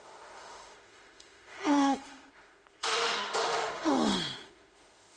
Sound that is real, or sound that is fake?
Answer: fake